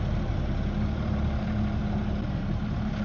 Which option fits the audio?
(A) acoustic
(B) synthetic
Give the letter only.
A